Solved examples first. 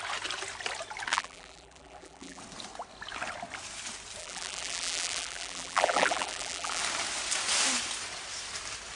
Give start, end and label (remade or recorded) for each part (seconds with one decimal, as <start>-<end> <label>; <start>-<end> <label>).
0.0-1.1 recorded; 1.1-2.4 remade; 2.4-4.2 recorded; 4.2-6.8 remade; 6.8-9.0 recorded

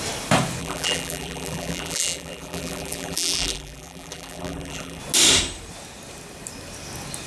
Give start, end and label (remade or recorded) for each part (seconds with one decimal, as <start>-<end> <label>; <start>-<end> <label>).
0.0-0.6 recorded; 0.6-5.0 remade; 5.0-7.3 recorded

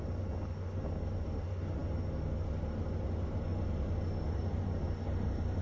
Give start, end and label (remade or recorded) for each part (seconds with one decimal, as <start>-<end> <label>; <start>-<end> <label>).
0.0-5.6 recorded

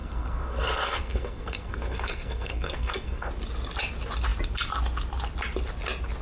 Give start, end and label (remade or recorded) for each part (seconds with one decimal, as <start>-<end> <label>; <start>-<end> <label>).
0.0-3.3 remade; 3.3-6.2 recorded

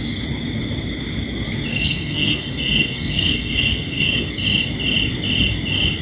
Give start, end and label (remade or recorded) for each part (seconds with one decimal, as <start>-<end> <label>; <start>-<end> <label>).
0.0-1.7 recorded; 1.7-4.3 remade; 4.3-6.0 recorded

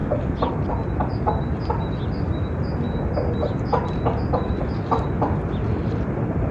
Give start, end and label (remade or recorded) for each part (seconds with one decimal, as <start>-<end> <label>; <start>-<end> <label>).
0.0-6.5 recorded